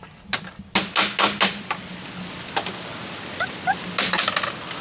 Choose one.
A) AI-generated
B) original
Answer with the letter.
B